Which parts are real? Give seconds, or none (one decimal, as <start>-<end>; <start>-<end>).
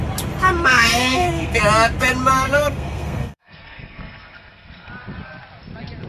0.0-0.7; 1.6-2.3; 4.9-6.1